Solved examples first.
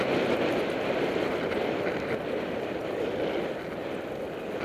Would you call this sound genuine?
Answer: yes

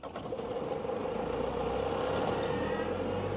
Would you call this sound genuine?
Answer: yes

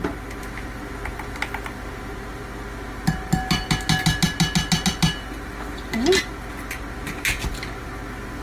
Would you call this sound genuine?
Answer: yes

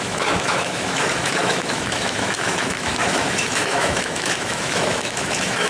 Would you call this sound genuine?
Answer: no